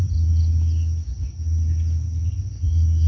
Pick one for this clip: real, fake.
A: real